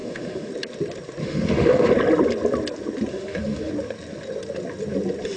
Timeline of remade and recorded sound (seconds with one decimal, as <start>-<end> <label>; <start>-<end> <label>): 0.0-0.5 remade; 0.5-1.2 recorded; 1.2-1.9 remade; 1.9-3.1 recorded; 3.1-3.7 remade; 3.7-5.4 recorded